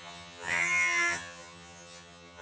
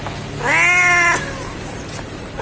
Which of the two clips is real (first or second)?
second